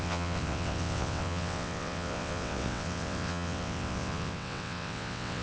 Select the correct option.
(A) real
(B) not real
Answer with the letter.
B